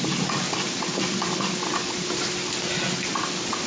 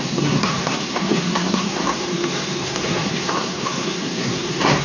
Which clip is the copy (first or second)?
second